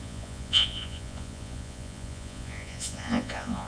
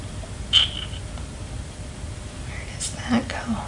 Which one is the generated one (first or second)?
first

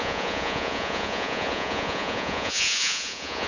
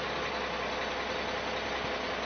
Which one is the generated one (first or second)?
first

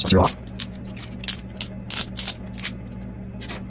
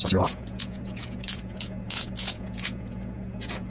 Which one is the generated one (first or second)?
second